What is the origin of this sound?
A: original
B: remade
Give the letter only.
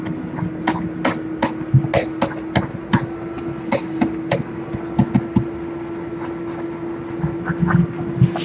A